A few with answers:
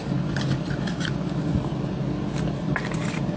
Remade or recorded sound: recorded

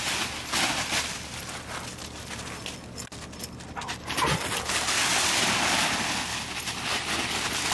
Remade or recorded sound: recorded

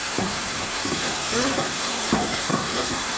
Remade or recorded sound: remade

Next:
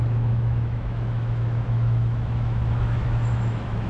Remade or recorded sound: remade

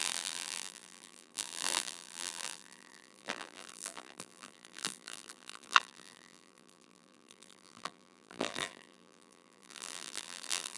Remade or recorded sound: remade